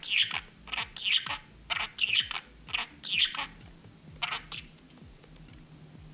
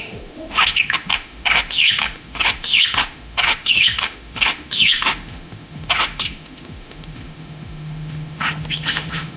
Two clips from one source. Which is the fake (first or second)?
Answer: second